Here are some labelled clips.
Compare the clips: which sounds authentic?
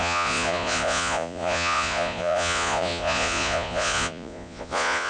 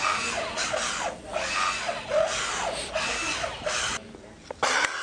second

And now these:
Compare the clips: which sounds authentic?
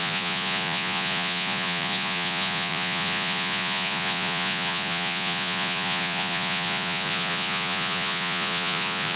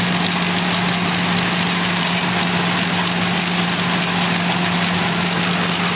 second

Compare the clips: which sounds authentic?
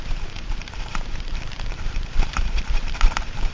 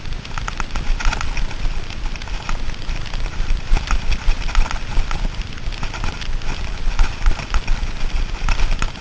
second